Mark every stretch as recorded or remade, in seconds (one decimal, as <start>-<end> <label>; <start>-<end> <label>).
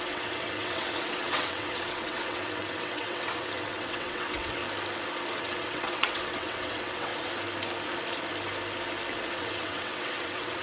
0.0-4.6 remade; 4.6-5.4 recorded; 5.4-7.1 remade; 7.1-9.4 recorded; 9.4-10.6 remade